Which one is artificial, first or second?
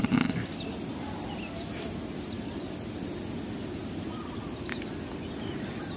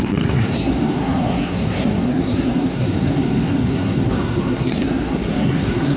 second